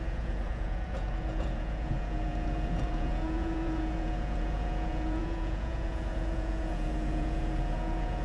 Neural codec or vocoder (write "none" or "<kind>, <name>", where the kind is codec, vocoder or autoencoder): vocoder, Vocos